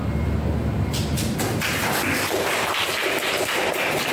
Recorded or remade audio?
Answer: recorded